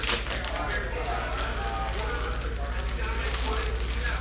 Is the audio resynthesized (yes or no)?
no